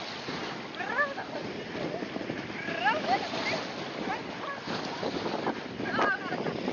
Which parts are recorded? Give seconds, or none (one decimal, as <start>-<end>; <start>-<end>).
0.0-6.7